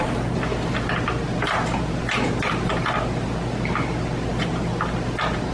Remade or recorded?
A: recorded